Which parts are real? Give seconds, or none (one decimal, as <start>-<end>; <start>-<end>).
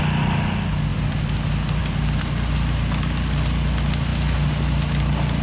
0.0-5.4